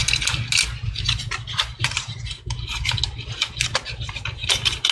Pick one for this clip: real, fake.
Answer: real